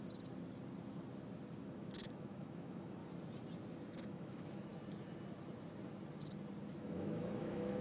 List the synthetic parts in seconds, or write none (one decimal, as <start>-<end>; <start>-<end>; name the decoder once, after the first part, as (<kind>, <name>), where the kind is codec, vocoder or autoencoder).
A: 1.6-3.0 (autoencoder, DAC-VAE); 3.9-4.7; 6.8-7.8